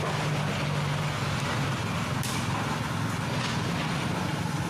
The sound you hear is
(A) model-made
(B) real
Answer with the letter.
B